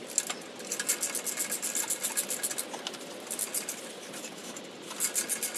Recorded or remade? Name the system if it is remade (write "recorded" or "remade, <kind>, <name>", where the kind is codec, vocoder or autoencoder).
recorded